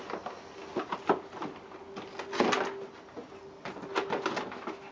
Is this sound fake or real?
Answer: real